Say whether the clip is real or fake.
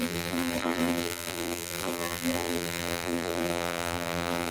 fake